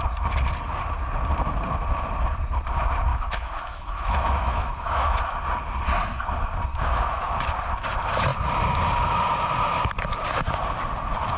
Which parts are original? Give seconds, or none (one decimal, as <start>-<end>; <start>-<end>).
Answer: 0.0-3.1; 5.2-6.7; 7.3-11.4